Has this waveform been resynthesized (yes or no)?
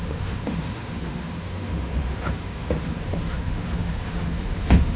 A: yes